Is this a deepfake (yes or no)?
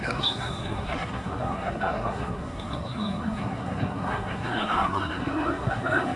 yes